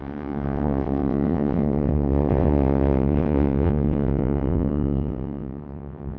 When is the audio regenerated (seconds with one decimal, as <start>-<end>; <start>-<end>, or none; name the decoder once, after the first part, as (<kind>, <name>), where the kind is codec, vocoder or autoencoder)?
0.0-6.2 (vocoder, WaveNeXt)